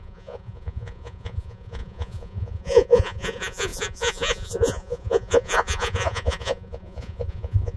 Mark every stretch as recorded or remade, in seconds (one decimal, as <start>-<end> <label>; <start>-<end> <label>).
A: 0.0-7.8 remade